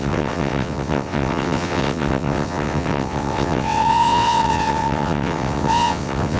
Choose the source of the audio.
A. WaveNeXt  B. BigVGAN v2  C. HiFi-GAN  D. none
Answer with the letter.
A